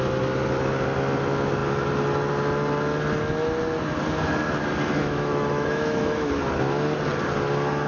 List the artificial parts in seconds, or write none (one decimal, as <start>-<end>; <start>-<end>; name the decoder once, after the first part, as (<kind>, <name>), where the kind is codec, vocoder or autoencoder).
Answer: 5.0-6.3 (autoencoder, DAC-VAE)